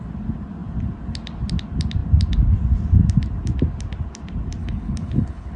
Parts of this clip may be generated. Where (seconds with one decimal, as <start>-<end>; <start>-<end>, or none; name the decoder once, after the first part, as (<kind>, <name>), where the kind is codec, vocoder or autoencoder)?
4.6-5.6 (codec, HILCodec)